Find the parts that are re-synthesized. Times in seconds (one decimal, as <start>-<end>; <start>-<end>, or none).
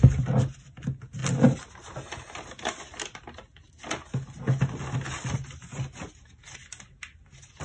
none